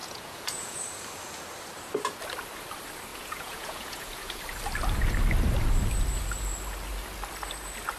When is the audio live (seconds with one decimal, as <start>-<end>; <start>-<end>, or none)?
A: 0.8-3.1; 4.4-8.0